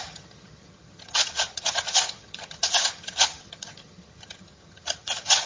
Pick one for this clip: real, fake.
fake